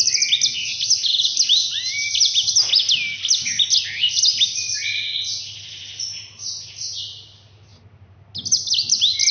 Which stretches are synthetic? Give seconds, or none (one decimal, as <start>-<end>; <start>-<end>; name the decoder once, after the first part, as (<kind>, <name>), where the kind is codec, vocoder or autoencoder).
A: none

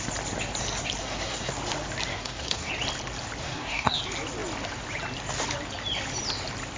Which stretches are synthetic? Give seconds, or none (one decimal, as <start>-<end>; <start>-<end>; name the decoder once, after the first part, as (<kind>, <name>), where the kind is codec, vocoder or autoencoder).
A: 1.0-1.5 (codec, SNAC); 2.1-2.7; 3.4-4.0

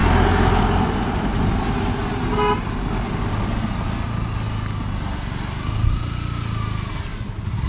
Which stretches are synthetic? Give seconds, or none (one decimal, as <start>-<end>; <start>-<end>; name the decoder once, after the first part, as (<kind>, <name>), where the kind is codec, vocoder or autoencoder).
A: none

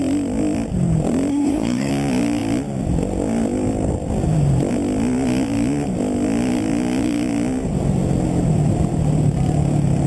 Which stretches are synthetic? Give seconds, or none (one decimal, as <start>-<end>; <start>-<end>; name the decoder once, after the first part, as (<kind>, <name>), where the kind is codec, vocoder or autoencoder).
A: 1.3-1.9 (codec, SNAC)

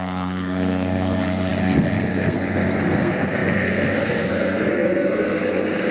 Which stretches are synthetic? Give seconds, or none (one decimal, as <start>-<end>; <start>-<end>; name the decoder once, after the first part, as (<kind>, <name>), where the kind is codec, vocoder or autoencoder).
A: 0.0-5.9 (codec, SNAC)